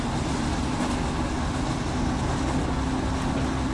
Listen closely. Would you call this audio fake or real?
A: real